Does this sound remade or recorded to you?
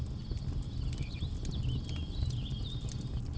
recorded